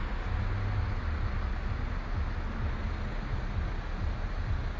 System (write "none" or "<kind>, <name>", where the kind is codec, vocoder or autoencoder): none